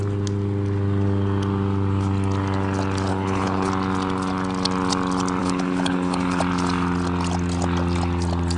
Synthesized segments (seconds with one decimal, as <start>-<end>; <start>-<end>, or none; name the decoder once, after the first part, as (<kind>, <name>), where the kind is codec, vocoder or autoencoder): 3.1-3.7 (codec, HILCodec); 5.4-6.4